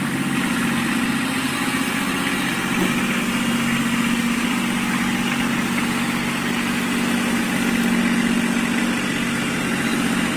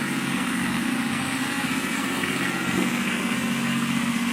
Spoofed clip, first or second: second